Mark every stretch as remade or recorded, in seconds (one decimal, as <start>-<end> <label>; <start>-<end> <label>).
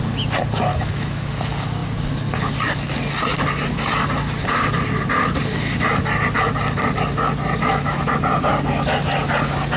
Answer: 0.0-0.7 recorded; 0.7-1.3 remade; 1.3-7.6 recorded; 7.6-8.1 remade; 8.1-9.8 recorded